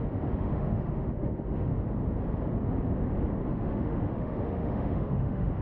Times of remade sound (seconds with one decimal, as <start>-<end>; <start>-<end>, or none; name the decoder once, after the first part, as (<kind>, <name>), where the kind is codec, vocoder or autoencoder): 0.0-1.7 (autoencoder, DAC-VAE); 3.5-5.6